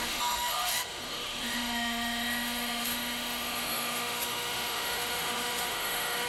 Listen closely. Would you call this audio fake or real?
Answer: fake